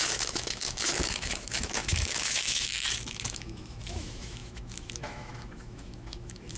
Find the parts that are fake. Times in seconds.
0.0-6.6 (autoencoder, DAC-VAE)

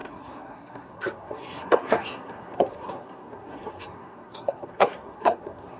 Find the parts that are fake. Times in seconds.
0.0-5.8 (codec, SNAC)

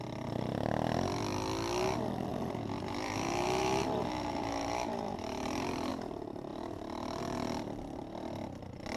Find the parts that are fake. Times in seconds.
2.3-5.9 (vocoder, BigVGAN v2); 6.5-7.2